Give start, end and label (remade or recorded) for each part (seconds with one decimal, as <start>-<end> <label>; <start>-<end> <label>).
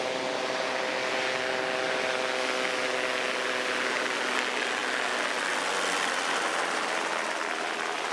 0.0-8.1 recorded